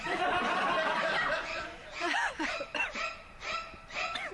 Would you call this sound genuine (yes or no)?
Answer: no